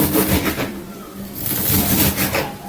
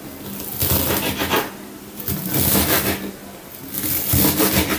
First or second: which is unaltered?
second